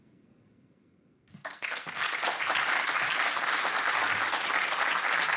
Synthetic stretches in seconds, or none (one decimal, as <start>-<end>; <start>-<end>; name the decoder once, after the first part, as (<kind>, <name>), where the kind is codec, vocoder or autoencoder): 0.0-2.0 (codec, SNAC)